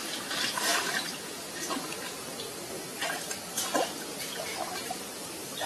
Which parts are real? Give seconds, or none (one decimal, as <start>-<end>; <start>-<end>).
0.7-4.1